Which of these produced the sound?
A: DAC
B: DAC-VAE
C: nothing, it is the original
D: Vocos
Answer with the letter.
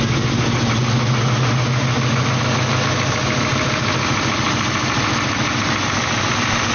C